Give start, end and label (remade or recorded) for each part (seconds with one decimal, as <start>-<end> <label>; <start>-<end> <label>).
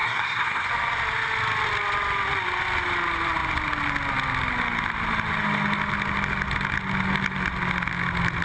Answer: 0.0-0.7 remade; 0.7-8.4 recorded